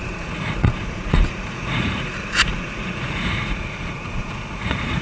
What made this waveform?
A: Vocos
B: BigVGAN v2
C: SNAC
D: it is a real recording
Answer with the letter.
A